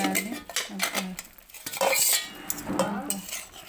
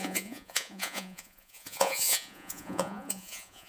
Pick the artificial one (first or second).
second